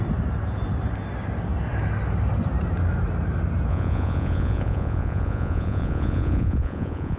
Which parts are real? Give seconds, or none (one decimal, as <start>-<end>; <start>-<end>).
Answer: 0.0-3.7